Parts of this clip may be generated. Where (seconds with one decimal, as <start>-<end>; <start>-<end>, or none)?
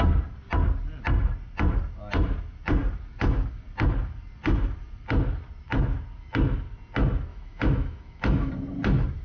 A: 7.3-8.5